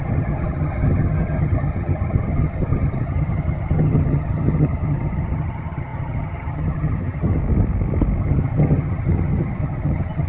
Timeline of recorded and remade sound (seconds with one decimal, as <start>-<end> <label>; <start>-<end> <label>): 0.0-7.4 remade; 7.4-8.2 recorded; 8.2-10.3 remade